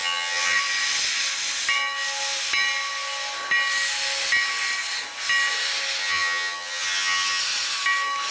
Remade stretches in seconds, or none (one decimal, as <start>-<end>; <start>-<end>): 0.0-0.6; 6.0-7.4